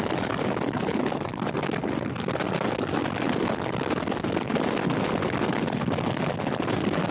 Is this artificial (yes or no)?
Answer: no